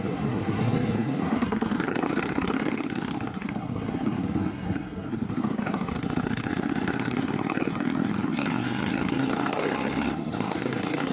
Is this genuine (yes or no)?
no